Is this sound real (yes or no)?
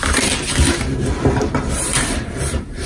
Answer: no